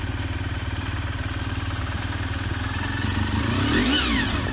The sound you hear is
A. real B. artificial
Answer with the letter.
A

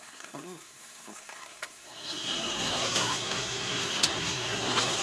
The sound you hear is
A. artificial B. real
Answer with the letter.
A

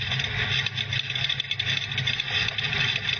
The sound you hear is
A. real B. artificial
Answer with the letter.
A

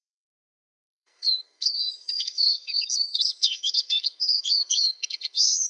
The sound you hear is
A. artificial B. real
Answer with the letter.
A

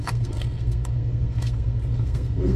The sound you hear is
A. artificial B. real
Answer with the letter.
A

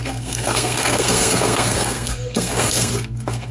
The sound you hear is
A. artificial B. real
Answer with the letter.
A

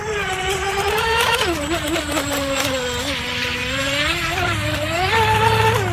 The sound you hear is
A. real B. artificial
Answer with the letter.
A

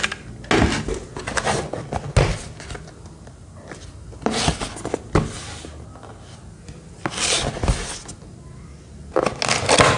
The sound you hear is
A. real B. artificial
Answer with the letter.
A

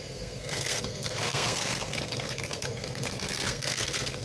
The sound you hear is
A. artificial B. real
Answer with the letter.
A